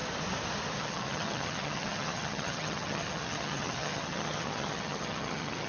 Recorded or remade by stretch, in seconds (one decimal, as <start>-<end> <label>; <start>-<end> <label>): 0.0-0.8 recorded; 0.8-5.7 remade